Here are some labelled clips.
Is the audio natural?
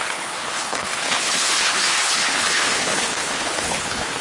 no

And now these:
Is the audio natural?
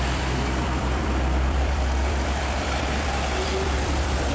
no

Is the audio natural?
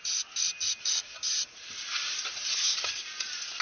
yes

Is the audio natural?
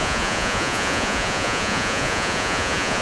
no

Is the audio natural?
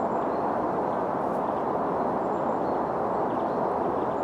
yes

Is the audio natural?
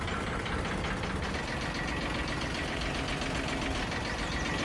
yes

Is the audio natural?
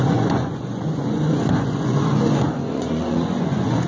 no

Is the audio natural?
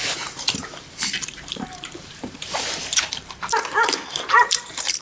no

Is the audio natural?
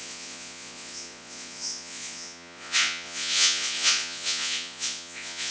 no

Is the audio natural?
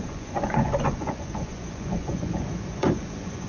no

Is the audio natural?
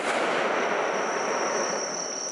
yes